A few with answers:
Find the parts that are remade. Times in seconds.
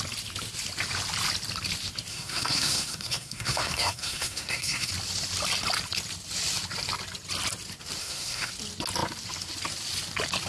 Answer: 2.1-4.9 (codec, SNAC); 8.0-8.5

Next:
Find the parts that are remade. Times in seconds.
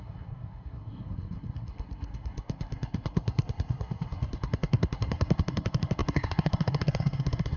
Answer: 0.0-7.6 (codec, SNAC)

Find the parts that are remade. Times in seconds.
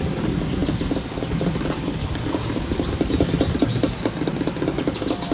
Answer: none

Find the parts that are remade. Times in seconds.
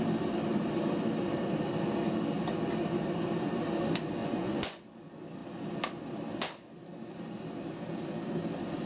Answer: 4.2-4.8 (vocoder, Vocos)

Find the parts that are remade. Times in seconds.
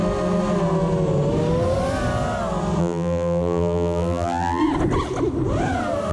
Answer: 2.8-4.6 (vocoder, BigVGAN v2)